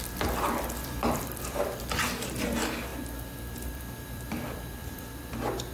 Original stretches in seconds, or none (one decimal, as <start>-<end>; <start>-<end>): 0.0-0.8; 1.6-2.9; 5.3-5.7